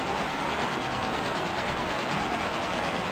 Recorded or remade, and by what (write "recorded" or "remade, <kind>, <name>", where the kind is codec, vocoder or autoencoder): remade, codec, SNAC